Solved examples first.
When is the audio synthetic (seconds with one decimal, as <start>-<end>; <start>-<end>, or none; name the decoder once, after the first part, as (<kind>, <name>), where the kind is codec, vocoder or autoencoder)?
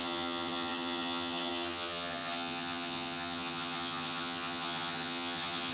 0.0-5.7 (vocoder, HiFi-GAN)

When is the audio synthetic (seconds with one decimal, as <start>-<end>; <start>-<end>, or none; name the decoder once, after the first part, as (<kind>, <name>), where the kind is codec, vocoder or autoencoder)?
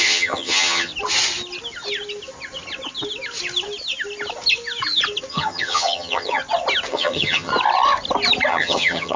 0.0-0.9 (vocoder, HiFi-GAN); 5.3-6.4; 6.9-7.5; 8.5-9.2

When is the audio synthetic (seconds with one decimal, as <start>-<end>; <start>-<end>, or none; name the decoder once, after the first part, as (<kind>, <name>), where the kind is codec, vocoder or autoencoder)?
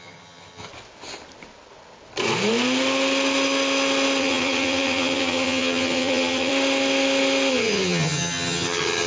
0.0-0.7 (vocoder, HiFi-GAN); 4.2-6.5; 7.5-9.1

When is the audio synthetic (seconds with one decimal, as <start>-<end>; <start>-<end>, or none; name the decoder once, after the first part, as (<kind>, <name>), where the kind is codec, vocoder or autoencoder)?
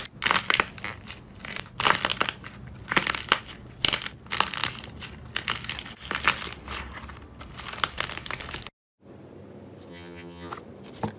9.9-10.5 (vocoder, HiFi-GAN)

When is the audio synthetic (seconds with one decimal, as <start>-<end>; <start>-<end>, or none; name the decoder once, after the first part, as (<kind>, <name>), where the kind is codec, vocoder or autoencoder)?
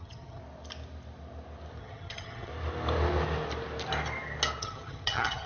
0.0-0.4 (vocoder, HiFi-GAN); 1.8-2.5; 4.6-5.5